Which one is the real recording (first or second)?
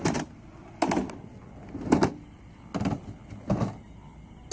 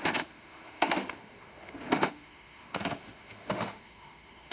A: first